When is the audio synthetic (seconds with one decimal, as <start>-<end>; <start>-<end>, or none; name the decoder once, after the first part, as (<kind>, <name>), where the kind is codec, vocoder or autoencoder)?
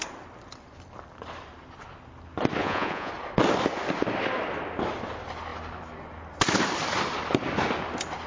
2.6-3.1 (vocoder, Vocos)